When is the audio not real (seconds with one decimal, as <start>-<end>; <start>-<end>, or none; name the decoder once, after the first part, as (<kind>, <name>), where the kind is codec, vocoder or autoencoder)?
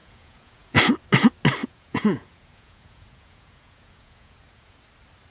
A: 0.0-0.8 (vocoder, Vocos); 1.6-4.8